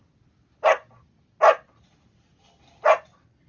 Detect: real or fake real